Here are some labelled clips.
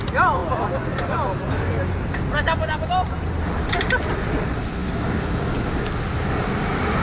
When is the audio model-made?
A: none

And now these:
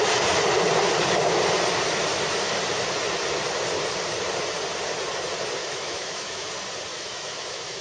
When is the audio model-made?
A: 5.6-6.5 (autoencoder, DAC-VAE); 6.9-7.8

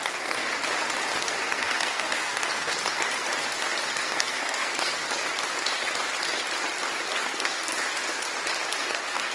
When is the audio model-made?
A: 0.0-0.5 (codec, SNAC); 1.2-3.3; 3.9-5.0; 7.2-7.7; 8.8-9.3

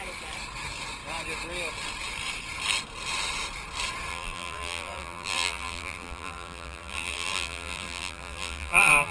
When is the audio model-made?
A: 4.1-9.1 (vocoder, BigVGAN v2)

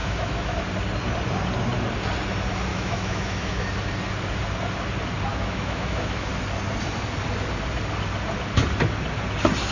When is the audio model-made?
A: 0.0-0.6 (autoencoder, DAC-VAE); 2.7-3.7; 5.3-6.3

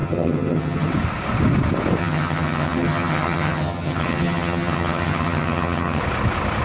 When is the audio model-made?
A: 0.0-0.9 (vocoder, HiFi-GAN); 2.0-6.0